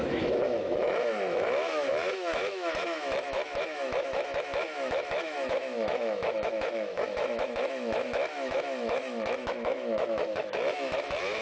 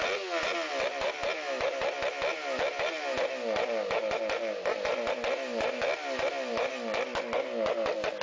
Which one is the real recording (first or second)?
second